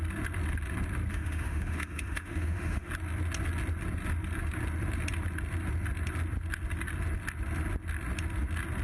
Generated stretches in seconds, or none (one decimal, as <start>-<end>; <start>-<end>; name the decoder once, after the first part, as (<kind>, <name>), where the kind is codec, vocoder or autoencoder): 1.1-2.9 (autoencoder, DAC-VAE)